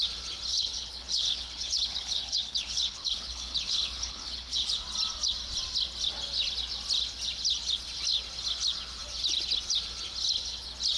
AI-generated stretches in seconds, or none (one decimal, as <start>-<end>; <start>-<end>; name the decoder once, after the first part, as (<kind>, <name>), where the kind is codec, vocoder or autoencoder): 0.5-4.8 (codec, HILCodec)